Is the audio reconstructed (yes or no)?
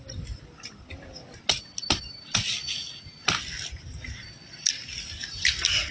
no